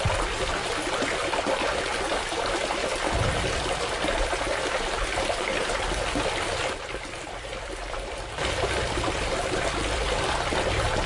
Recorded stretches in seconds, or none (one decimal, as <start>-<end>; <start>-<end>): none